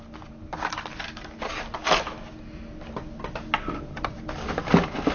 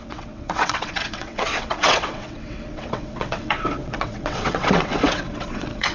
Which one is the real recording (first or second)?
first